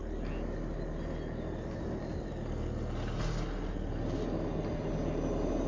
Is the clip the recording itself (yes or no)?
yes